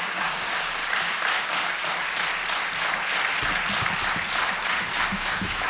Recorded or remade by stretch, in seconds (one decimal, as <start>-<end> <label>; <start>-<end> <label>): 0.0-0.8 remade; 0.8-1.4 recorded; 1.4-1.8 remade; 1.8-4.8 recorded; 4.8-5.7 remade